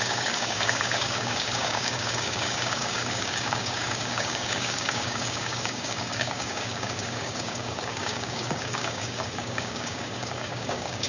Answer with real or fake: fake